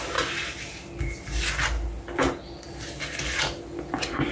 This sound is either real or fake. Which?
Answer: real